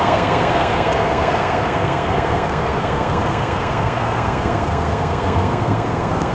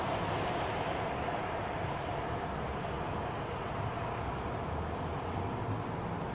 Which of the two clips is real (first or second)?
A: second